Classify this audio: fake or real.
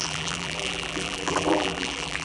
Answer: fake